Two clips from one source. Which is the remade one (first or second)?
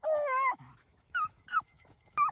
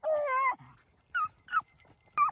first